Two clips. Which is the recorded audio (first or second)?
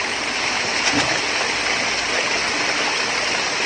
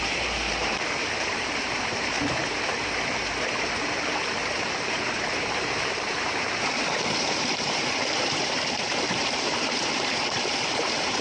first